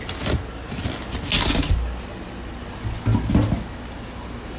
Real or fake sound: real